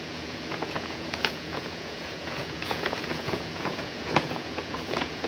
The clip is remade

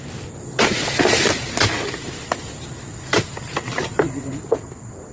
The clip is recorded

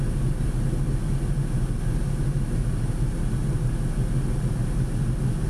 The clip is recorded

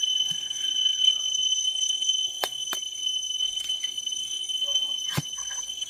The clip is remade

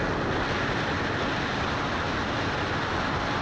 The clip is recorded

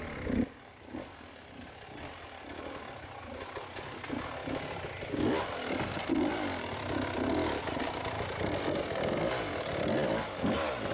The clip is recorded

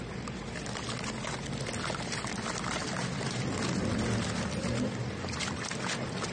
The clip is recorded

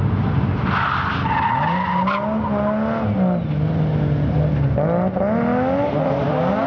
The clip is recorded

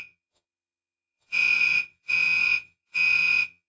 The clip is remade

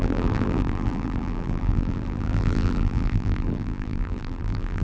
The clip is remade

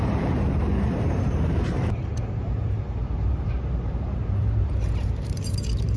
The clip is remade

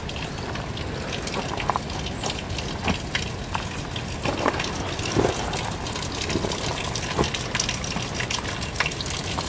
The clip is recorded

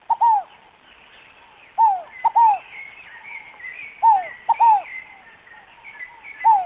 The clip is recorded